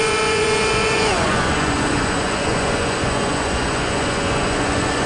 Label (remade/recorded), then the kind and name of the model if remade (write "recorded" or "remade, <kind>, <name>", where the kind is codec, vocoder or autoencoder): remade, vocoder, Vocos